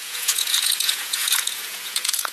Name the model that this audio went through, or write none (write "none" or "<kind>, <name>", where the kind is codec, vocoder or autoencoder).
vocoder, Vocos